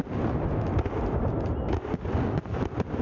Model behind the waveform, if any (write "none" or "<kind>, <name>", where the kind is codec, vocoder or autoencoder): none